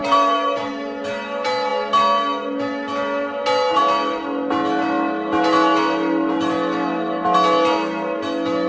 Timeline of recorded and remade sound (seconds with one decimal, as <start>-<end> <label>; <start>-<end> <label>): 0.0-0.7 remade; 0.7-8.7 recorded